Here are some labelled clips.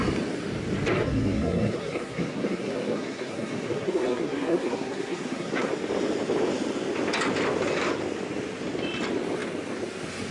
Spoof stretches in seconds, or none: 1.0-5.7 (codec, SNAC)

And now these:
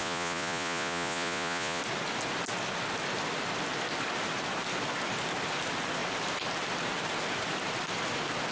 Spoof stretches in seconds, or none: 0.0-1.8 (vocoder, Vocos)

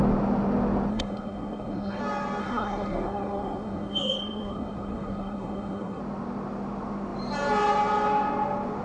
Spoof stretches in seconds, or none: 0.9-2.0 (codec, SNAC); 2.4-6.0

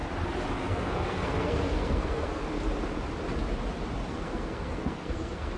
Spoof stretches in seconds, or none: 0.6-2.4 (codec, SNAC); 4.1-5.6

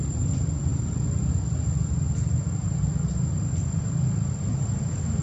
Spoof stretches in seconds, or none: none

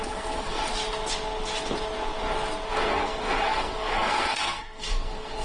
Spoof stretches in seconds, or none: 0.0-0.6 (codec, SNAC); 2.7-5.4

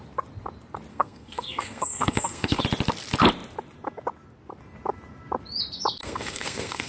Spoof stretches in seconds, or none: 0.9-2.6 (codec, SNAC); 6.0-6.9